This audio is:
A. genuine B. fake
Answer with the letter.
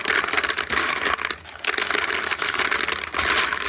A